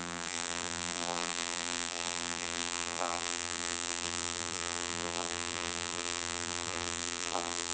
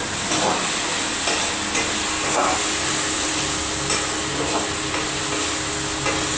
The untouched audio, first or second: second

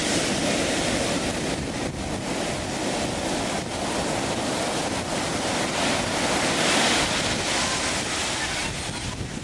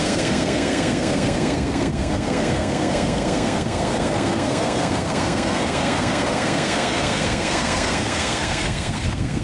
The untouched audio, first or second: first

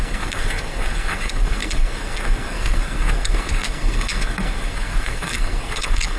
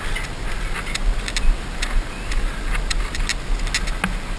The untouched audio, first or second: second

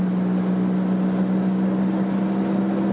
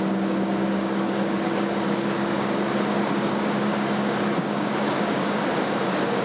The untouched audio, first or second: first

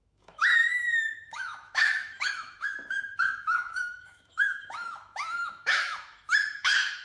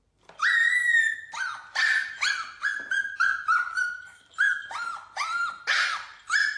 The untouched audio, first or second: second